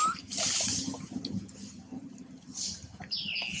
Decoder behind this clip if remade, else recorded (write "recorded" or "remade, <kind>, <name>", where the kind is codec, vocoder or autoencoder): recorded